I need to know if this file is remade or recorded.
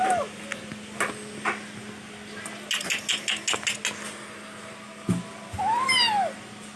recorded